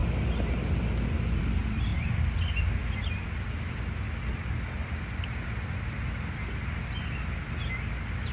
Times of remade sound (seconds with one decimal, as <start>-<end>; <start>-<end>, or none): none